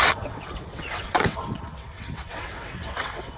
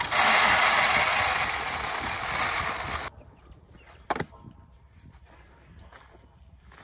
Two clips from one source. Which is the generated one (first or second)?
first